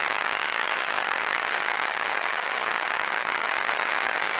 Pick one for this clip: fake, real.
fake